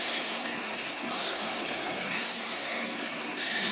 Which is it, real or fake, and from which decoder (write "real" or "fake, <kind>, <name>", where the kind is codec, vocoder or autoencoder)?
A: fake, codec, SNAC